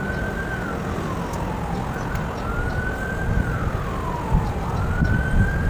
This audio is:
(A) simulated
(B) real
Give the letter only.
B